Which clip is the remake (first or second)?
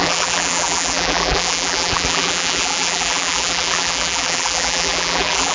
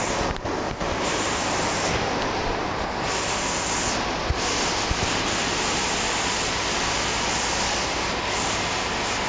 first